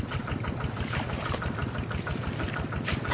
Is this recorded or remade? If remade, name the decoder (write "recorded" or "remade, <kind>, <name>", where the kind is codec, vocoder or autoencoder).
recorded